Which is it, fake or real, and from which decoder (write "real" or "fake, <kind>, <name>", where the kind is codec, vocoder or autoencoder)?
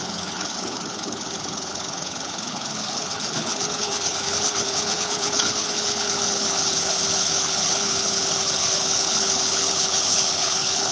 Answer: fake, codec, HILCodec